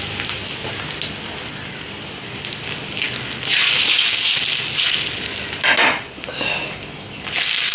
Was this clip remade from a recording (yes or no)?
no